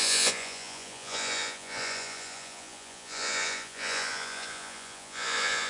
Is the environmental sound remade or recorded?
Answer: remade